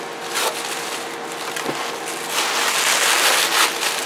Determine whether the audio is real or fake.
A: real